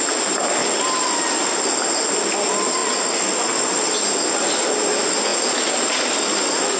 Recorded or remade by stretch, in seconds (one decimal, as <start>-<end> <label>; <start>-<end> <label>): 0.0-6.8 recorded